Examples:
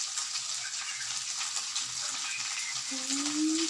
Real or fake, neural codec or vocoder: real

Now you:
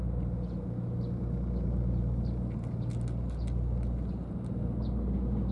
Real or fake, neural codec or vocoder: real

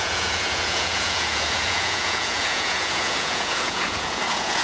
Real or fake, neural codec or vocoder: fake, vocoder, Vocos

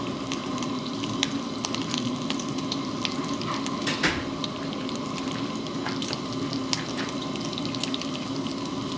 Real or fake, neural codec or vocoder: real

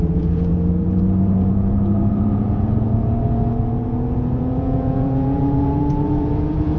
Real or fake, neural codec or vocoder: fake, vocoder, Vocos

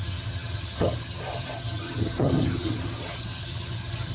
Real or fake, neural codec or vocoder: fake, vocoder, HiFi-GAN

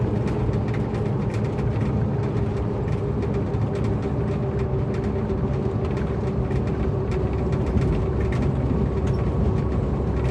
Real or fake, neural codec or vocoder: real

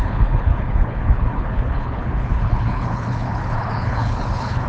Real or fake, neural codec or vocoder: fake, codec, HILCodec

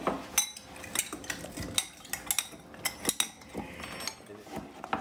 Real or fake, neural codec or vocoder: real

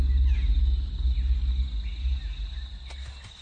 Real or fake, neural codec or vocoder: real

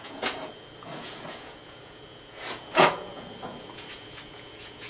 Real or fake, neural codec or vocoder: fake, vocoder, Vocos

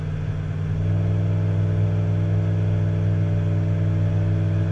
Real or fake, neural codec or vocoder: real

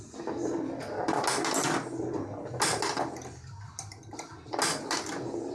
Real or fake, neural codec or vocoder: real